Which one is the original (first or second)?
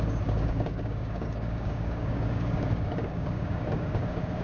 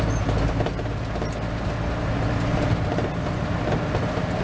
second